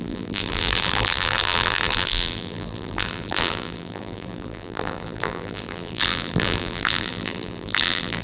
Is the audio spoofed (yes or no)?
yes